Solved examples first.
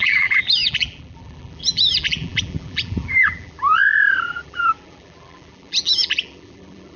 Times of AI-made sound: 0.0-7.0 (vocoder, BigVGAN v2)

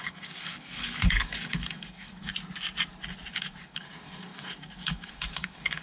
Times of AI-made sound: 0.0-2.3 (codec, DAC); 3.3-5.8

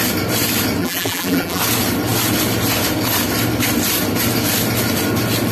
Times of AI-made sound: 0.8-1.6 (vocoder, BigVGAN v2)

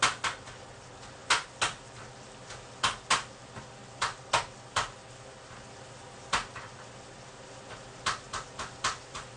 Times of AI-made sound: none

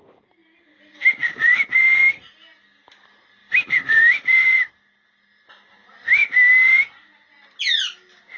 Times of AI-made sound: 0.4-1.5 (vocoder, BigVGAN v2); 3.4-4.7